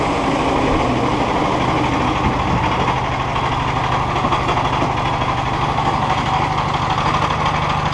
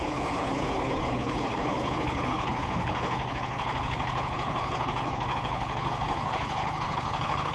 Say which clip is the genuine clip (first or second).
first